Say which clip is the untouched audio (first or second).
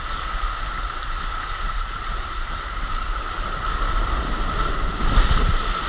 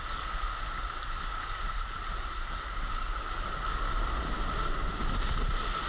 second